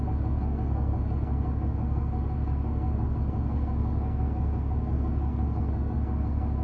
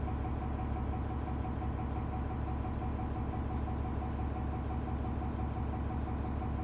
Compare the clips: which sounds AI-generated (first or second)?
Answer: first